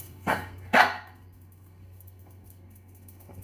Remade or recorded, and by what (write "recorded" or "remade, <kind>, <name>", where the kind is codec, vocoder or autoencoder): remade, codec, SNAC